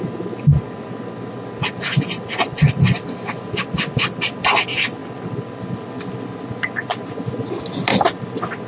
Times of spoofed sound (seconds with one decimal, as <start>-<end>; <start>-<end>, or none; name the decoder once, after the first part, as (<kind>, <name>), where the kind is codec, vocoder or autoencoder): none